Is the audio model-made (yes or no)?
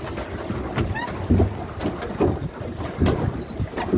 no